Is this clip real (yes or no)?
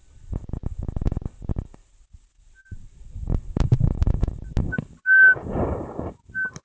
yes